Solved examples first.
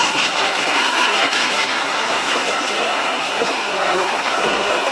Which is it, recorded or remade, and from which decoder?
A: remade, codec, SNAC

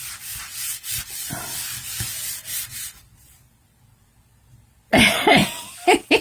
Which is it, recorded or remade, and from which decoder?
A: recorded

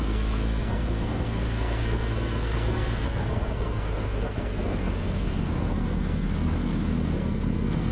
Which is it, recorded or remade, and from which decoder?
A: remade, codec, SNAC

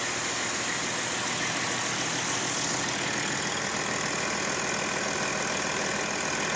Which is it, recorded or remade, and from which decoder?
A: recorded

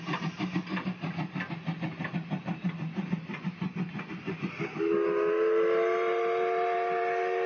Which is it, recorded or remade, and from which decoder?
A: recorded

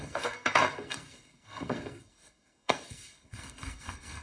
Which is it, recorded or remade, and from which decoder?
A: remade, codec, SNAC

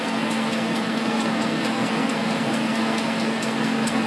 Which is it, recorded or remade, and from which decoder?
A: remade, codec, SNAC